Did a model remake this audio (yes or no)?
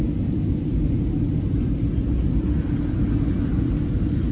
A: no